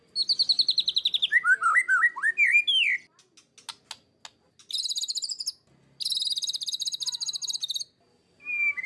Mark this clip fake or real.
real